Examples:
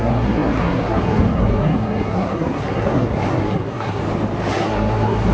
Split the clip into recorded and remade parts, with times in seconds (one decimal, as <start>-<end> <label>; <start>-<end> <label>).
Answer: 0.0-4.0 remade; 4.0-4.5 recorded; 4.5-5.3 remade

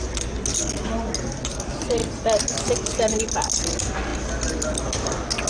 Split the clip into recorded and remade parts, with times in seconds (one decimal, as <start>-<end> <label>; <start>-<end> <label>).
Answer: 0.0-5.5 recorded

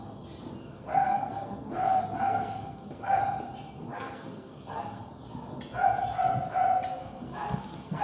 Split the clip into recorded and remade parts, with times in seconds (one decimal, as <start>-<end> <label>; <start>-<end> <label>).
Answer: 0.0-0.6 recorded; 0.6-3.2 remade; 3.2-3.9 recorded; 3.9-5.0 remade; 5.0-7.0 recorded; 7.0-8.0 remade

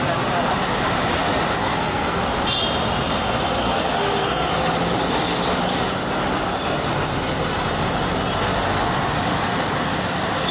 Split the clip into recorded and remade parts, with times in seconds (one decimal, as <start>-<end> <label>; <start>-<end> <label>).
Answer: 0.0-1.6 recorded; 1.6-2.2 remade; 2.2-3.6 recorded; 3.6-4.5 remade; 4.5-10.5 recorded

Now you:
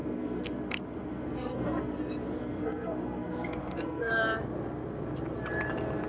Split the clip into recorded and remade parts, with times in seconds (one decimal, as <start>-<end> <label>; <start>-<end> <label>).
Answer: 0.0-1.9 remade; 1.9-2.4 recorded; 2.4-4.1 remade; 4.1-6.1 recorded

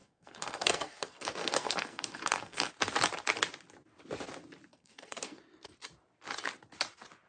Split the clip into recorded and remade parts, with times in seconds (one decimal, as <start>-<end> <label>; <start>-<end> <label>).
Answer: 0.0-2.7 remade; 2.7-4.7 recorded; 4.7-5.4 remade; 5.4-7.3 recorded